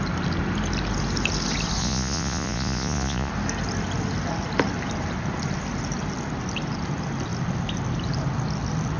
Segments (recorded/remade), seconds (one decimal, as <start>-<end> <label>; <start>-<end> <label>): 0.0-1.8 recorded; 1.8-3.3 remade; 3.3-9.0 recorded